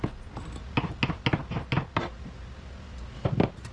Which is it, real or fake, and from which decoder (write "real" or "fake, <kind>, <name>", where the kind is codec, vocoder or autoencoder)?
real